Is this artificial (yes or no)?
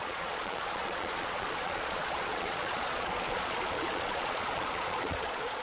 yes